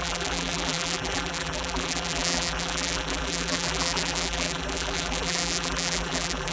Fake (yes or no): yes